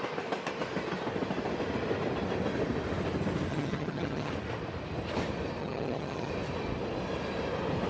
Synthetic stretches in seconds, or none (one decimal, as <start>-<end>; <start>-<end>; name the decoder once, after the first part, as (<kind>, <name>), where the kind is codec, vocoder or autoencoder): 3.5-4.3 (vocoder, HiFi-GAN); 5.6-6.3